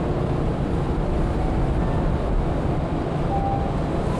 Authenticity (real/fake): real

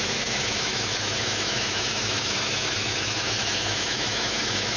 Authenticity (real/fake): fake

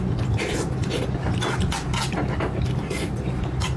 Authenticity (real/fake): real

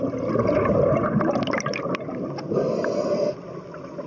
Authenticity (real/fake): real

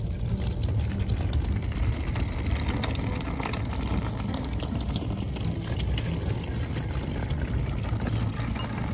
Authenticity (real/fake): real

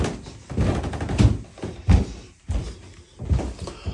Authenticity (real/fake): real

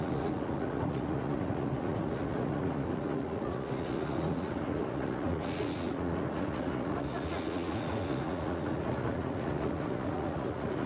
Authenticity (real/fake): fake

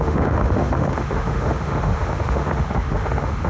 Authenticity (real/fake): fake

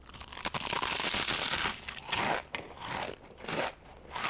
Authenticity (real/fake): fake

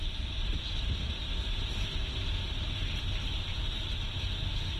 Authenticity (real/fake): real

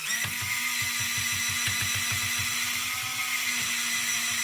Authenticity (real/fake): real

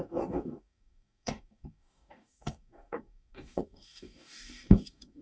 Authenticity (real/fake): fake